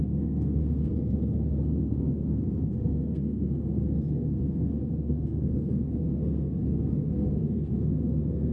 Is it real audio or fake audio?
fake